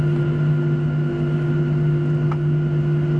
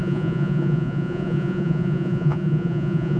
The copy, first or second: second